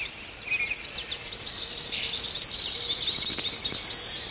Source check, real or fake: real